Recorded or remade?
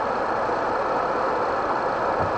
recorded